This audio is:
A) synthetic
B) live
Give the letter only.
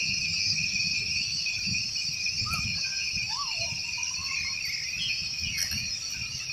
B